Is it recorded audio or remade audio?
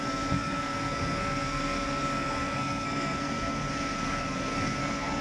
remade